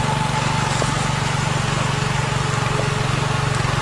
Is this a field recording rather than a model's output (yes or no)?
yes